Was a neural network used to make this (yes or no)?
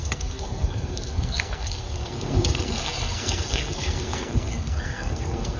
yes